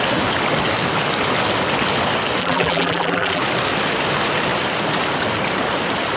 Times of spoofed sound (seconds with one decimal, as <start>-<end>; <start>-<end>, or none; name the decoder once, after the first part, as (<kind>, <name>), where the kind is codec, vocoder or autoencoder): 2.4-3.4 (vocoder, BigVGAN v2)